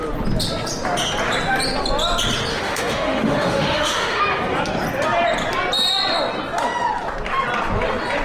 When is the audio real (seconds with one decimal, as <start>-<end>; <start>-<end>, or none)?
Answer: 0.0-2.5; 4.2-8.2